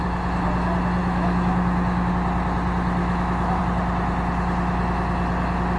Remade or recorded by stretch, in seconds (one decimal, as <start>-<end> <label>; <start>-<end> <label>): 0.0-1.0 recorded; 1.0-2.1 remade; 2.1-3.0 recorded; 3.0-3.6 remade; 3.6-5.8 recorded